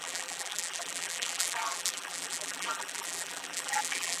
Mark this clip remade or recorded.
remade